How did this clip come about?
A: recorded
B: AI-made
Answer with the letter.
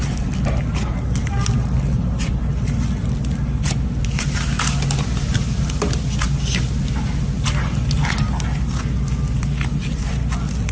A